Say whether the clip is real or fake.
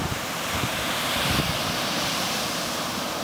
fake